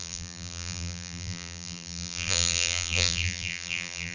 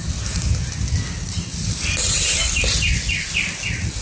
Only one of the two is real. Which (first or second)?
second